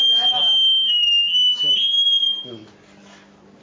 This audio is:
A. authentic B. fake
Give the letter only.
A